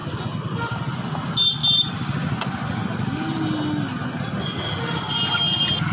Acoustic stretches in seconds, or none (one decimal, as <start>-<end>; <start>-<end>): 0.0-5.9